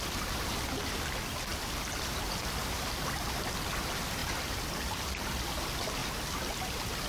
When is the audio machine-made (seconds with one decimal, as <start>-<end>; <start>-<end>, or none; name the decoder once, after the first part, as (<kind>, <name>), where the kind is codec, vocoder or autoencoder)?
none